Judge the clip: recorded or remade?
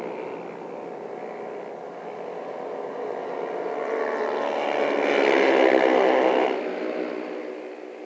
recorded